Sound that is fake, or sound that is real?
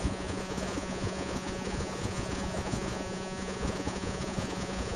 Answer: fake